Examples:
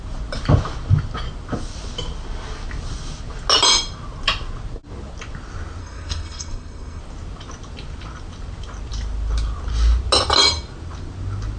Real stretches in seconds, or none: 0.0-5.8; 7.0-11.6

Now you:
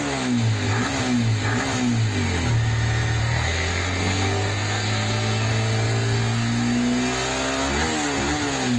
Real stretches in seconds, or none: 0.0-3.2; 5.5-8.8

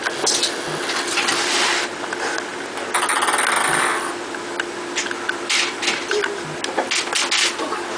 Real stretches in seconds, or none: 0.0-8.0

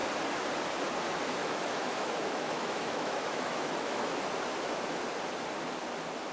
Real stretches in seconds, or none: 0.0-1.4; 4.1-6.3

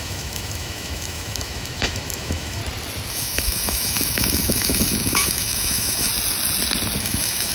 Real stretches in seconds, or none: 2.6-3.1; 6.1-7.0